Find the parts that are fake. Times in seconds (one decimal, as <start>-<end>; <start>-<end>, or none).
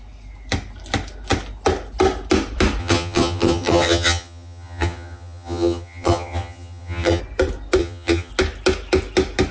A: 2.8-7.2; 7.8-8.3